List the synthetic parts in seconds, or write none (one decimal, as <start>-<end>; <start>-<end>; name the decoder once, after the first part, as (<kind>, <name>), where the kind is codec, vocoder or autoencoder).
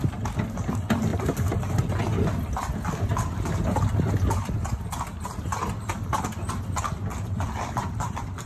none